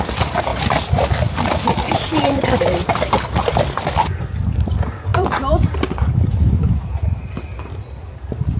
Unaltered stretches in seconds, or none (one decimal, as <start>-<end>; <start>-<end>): 0.0-5.1; 6.7-8.6